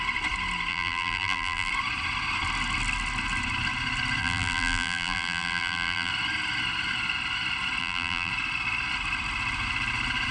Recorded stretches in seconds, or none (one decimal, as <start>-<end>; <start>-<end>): 0.0-0.7; 1.7-4.2; 6.1-7.8; 8.3-10.3